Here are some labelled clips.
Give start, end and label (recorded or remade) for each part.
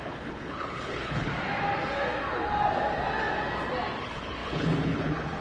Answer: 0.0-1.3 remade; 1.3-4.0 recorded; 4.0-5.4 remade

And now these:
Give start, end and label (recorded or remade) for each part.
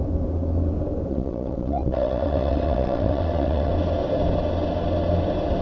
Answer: 0.0-1.1 recorded; 1.1-3.7 remade; 3.7-5.6 recorded